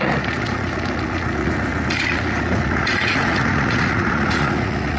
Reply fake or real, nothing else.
fake